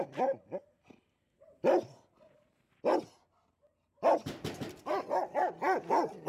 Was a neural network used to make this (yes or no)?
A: no